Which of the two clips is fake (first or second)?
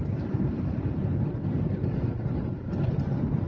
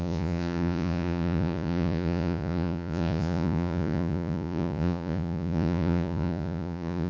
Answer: second